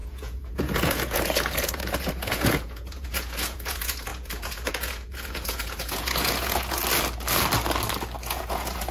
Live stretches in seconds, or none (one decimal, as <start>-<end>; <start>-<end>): 6.8-8.2